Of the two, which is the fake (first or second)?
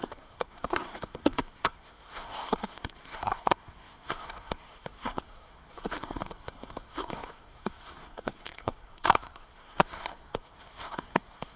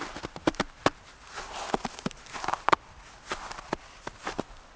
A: first